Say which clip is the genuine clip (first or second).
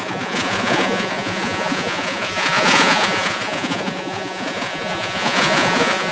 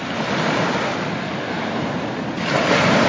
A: second